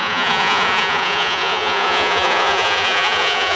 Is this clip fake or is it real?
fake